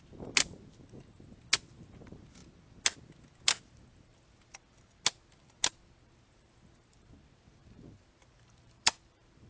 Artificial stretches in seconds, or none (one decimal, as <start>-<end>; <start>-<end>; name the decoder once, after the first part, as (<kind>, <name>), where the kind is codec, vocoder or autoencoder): 8.2-9.5 (vocoder, BigVGAN v2)